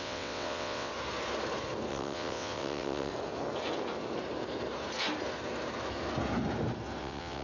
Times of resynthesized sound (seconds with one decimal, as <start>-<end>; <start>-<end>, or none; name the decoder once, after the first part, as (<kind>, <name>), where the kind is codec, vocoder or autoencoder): 0.0-0.9 (vocoder, WaveNeXt); 1.9-3.1; 7.0-7.4